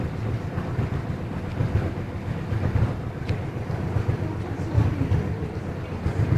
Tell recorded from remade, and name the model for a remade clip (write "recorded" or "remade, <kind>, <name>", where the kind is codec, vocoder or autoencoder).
recorded